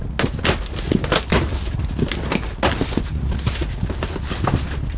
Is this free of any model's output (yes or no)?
yes